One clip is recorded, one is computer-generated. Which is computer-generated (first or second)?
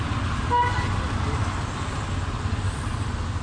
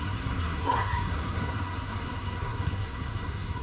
second